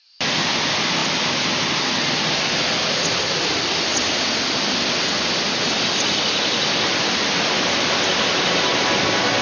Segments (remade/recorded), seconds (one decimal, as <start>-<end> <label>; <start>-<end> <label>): 0.0-9.4 recorded